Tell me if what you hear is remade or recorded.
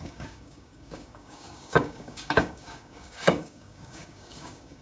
remade